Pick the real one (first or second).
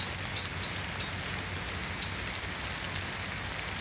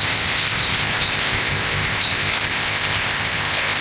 first